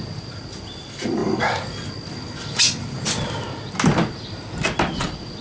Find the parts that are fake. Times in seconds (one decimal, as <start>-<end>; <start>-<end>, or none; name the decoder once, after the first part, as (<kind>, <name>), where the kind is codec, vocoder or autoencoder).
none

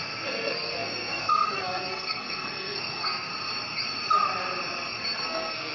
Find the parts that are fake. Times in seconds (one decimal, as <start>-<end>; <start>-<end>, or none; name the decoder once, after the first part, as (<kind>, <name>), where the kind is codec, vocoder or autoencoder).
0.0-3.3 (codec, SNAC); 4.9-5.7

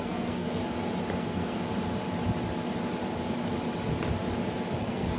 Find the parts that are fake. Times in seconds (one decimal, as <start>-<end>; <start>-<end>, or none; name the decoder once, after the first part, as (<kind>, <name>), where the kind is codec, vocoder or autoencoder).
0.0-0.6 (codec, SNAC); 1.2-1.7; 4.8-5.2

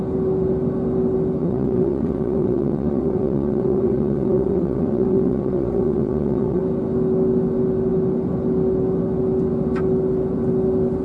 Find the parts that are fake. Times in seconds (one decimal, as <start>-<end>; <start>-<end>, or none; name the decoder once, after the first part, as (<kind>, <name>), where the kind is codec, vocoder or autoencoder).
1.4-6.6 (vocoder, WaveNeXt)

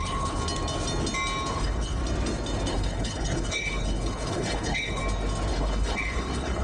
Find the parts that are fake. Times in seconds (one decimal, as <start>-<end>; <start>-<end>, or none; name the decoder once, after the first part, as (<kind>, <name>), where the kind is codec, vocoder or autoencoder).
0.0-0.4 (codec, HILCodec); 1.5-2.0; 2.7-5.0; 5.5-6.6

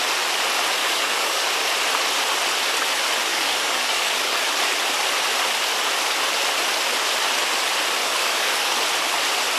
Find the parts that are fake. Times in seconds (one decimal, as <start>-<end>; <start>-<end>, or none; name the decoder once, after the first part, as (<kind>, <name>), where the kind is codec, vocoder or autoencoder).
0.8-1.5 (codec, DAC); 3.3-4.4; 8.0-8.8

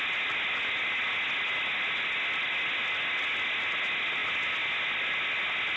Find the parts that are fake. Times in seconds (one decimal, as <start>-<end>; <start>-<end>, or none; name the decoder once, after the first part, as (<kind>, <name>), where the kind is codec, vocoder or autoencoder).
none